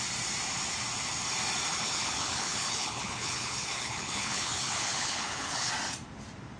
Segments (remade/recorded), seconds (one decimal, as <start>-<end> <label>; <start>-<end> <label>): 0.0-1.7 recorded; 1.7-5.7 remade; 5.7-6.6 recorded